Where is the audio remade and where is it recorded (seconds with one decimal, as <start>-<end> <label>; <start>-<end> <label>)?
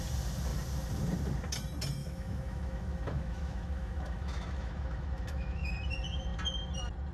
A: 0.0-2.0 recorded; 2.0-5.7 remade; 5.7-7.1 recorded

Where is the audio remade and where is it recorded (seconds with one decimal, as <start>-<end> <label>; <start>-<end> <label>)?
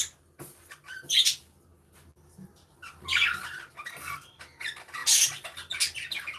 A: 0.0-3.9 recorded; 3.9-4.4 remade; 4.4-6.4 recorded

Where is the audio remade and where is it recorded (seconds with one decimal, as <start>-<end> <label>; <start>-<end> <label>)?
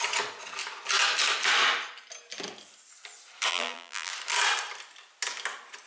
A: 0.0-3.5 recorded; 3.5-4.1 remade; 4.1-5.9 recorded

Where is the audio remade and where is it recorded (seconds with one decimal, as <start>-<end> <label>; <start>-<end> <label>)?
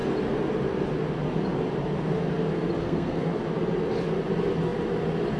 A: 0.0-2.8 recorded; 2.8-3.3 remade; 3.3-5.4 recorded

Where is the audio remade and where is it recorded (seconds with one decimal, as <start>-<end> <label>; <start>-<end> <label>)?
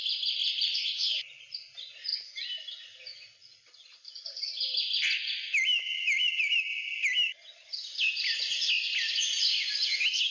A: 0.0-0.4 recorded; 0.4-1.2 remade; 1.2-10.3 recorded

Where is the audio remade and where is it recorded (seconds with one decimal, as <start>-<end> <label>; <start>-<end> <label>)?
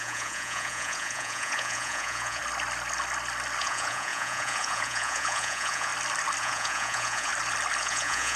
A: 0.0-2.4 remade; 2.4-3.6 recorded; 3.6-5.9 remade; 5.9-6.4 recorded; 6.4-7.3 remade; 7.3-7.8 recorded; 7.8-8.4 remade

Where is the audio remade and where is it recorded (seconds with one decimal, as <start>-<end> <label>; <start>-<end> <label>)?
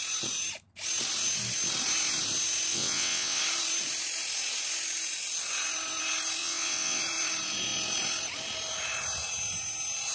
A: 0.0-2.7 recorded; 2.7-3.4 remade; 3.4-6.4 recorded; 6.4-7.0 remade; 7.0-10.1 recorded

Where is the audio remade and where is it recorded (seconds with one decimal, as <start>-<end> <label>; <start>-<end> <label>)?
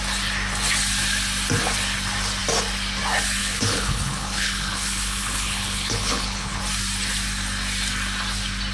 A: 0.0-3.4 recorded; 3.4-6.6 remade; 6.6-8.7 recorded